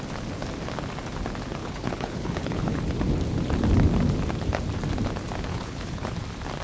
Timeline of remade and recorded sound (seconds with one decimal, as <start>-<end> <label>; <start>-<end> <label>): 0.0-1.6 recorded; 1.6-2.8 remade; 2.8-5.5 recorded; 5.5-6.1 remade; 6.1-6.6 recorded